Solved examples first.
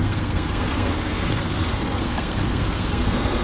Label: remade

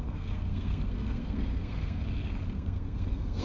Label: remade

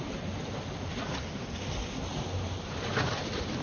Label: recorded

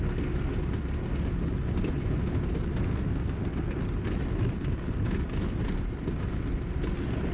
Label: recorded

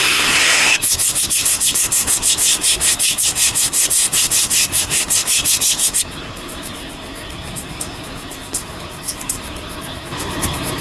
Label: remade